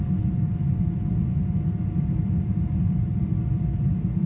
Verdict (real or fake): real